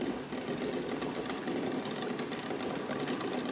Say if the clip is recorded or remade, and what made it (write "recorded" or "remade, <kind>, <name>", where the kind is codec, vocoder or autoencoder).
recorded